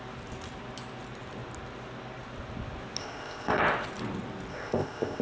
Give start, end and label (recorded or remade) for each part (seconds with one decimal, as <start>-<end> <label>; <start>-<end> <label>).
0.0-3.0 recorded; 3.0-3.6 remade; 3.6-4.5 recorded; 4.5-5.2 remade